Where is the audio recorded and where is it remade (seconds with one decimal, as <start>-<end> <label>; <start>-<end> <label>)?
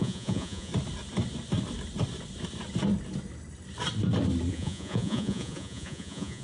0.0-0.7 remade; 0.7-4.5 recorded; 4.5-6.4 remade